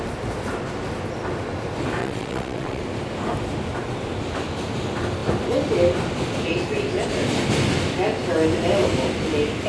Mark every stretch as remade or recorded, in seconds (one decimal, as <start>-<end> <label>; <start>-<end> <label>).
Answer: 0.0-2.0 recorded; 2.0-2.8 remade; 2.8-9.7 recorded